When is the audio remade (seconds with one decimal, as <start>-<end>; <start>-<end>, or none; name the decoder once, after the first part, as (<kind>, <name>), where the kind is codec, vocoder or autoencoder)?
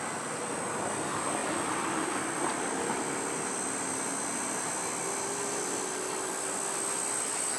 none